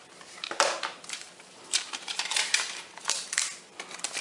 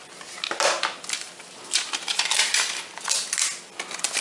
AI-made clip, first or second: first